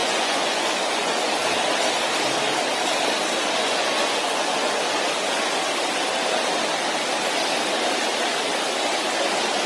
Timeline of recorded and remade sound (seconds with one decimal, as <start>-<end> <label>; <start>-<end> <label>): 0.0-1.3 remade; 1.3-3.6 recorded; 3.6-4.8 remade; 4.8-9.7 recorded